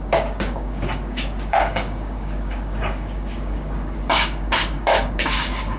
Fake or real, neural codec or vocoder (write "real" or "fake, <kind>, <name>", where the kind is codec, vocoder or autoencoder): fake, codec, DAC